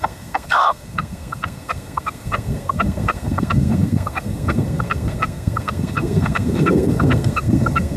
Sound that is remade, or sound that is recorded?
remade